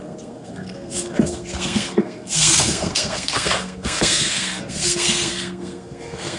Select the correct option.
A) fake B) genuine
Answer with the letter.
A